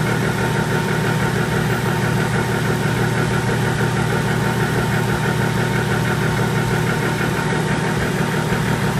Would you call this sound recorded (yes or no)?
yes